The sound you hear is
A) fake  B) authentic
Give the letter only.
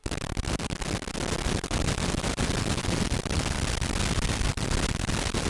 B